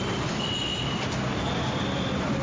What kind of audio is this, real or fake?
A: real